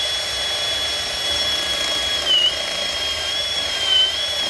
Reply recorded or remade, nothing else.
remade